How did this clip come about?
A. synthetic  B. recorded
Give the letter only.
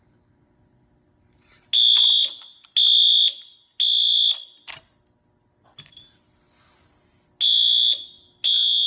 B